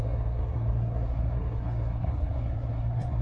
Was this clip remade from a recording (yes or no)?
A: yes